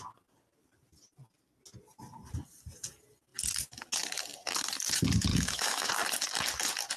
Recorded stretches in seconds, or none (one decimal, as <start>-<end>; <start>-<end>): 0.0-5.3; 5.9-7.0